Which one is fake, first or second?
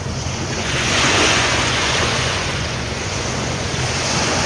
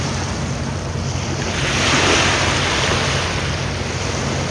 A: first